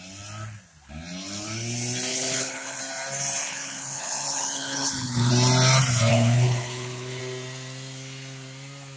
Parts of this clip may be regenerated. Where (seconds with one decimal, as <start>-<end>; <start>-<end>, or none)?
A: 2.1-2.8; 3.4-5.3; 6.1-7.2